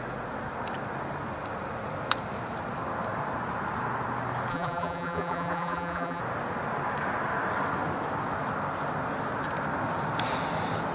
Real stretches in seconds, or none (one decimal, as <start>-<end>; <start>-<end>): 0.0-4.5; 6.2-10.9